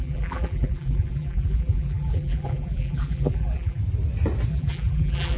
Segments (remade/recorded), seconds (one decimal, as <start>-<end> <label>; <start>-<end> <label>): 0.0-3.8 remade; 3.8-4.5 recorded; 4.5-5.4 remade